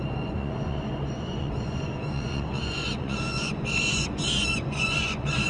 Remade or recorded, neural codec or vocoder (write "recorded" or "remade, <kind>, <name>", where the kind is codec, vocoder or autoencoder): remade, vocoder, Vocos